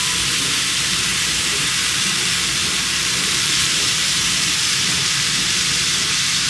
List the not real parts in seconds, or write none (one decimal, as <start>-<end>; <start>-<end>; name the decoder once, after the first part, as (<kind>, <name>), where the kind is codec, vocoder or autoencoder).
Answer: 1.1-2.2 (vocoder, BigVGAN v2); 2.6-4.5